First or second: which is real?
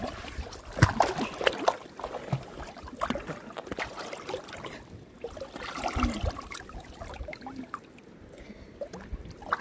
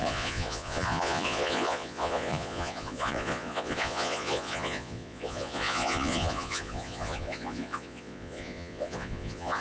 first